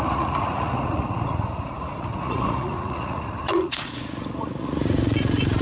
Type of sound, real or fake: fake